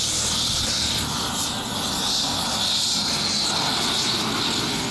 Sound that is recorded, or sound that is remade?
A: recorded